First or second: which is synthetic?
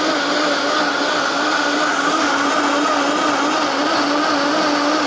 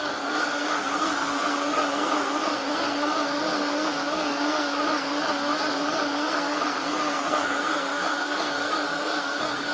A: second